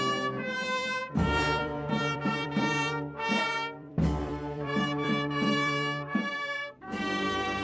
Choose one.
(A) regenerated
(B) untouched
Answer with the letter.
A